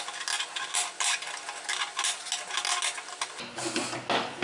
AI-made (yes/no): no